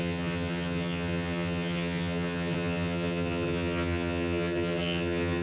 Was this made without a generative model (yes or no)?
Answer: no